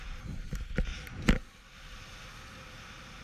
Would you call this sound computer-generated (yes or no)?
no